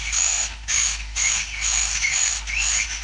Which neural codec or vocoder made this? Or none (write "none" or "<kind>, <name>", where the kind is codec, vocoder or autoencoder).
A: autoencoder, DAC-VAE